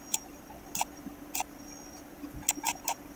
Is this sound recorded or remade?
recorded